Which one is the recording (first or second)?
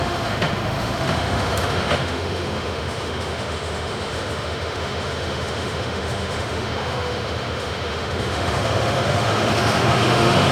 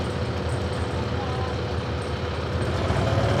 second